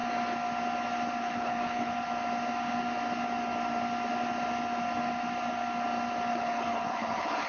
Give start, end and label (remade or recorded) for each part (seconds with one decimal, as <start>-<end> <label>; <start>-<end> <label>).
0.0-1.2 recorded; 1.2-1.9 remade; 1.9-6.3 recorded; 6.3-7.5 remade